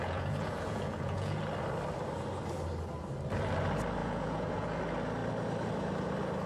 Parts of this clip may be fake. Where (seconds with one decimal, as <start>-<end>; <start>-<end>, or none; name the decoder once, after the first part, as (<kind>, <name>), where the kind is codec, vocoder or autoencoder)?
0.0-1.4 (vocoder, Vocos); 4.0-4.8